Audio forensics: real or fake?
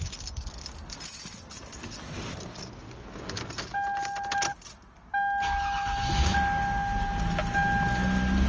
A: real